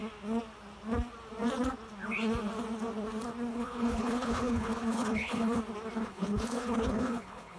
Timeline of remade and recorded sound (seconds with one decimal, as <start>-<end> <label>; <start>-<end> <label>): 0.0-3.5 recorded; 3.5-5.6 remade; 5.6-6.0 recorded; 6.0-7.6 remade